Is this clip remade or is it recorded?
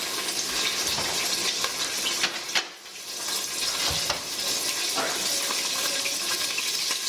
recorded